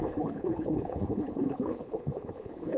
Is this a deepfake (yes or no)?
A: yes